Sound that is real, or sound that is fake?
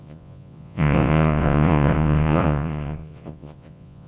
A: fake